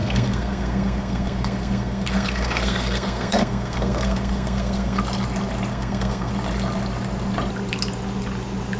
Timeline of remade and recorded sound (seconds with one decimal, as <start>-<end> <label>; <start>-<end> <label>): 0.0-5.0 remade; 5.0-5.7 recorded; 5.7-6.3 remade; 6.3-8.8 recorded